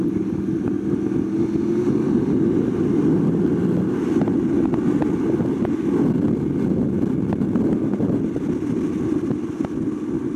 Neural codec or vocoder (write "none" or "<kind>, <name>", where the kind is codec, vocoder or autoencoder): none